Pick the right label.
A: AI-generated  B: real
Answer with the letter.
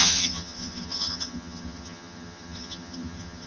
A